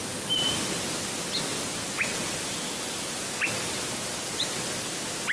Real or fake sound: real